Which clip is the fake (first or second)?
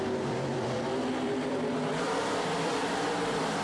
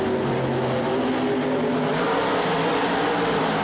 first